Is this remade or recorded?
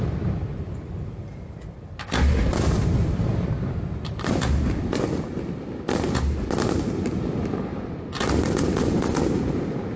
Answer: recorded